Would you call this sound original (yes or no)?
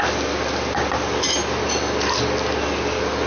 yes